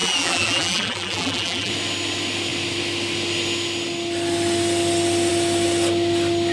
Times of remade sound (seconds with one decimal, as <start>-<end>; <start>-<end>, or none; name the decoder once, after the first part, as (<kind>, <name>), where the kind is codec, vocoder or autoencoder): 0.0-1.7 (vocoder, BigVGAN v2)